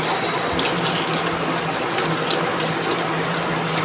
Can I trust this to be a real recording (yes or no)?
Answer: yes